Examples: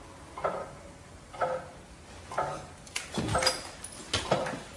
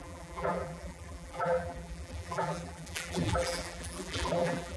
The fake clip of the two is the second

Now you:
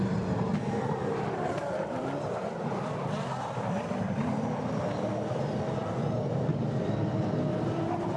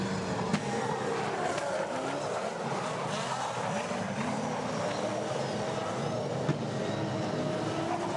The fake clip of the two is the first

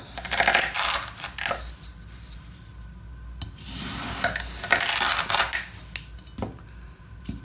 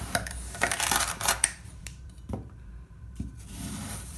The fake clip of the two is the second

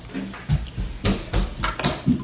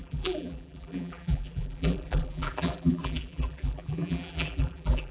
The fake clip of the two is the second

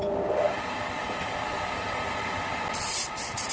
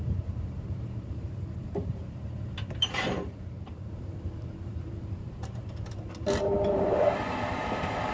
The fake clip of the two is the second